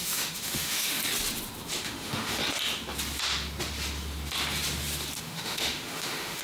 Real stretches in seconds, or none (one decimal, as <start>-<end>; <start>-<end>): 1.0-1.8; 2.4-5.2